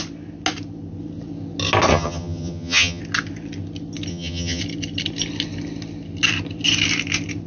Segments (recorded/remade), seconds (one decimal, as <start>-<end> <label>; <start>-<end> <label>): 0.0-1.9 recorded; 1.9-3.0 remade; 3.0-4.1 recorded; 4.1-4.6 remade; 4.6-7.5 recorded